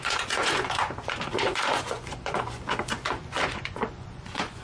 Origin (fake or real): fake